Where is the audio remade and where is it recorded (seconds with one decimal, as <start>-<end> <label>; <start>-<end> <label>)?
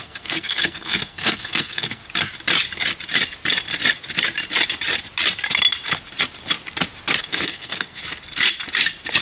0.0-2.0 remade; 2.0-7.2 recorded; 7.2-8.0 remade; 8.0-9.2 recorded